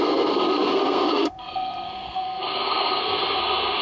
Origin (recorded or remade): remade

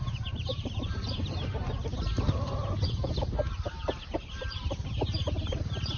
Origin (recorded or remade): remade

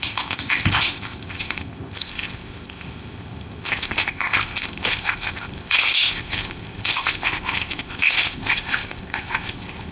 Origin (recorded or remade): remade